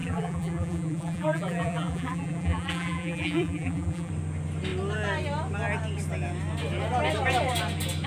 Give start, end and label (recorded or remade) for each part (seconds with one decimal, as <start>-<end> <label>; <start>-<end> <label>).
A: 0.0-4.1 remade; 4.1-8.1 recorded